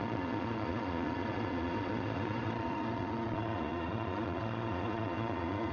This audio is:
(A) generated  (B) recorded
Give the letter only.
A